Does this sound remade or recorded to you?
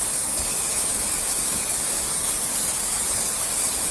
remade